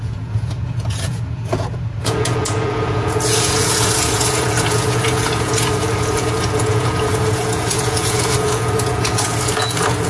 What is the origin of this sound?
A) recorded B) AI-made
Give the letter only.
B